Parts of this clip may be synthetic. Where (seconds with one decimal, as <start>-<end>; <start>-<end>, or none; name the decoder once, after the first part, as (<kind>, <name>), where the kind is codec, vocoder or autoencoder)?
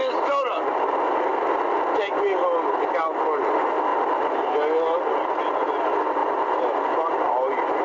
none